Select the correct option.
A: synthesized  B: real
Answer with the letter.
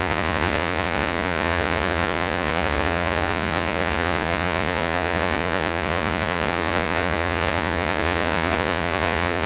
A